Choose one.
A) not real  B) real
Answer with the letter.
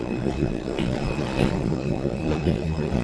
A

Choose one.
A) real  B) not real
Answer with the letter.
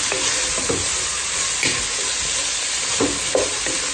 A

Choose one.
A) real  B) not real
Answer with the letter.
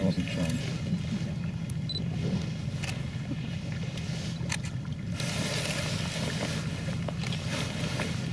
A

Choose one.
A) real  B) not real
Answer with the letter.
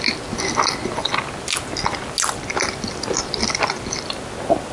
A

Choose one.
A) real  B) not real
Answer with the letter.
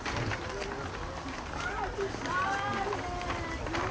A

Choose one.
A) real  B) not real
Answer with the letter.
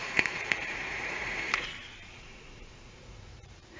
B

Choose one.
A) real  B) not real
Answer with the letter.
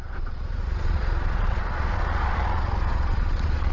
B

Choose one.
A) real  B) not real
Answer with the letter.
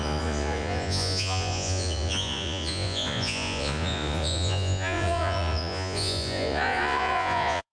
B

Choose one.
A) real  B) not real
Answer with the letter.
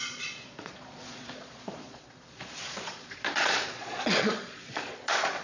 B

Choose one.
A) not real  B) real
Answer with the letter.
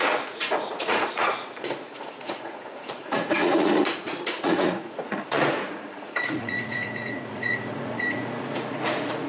A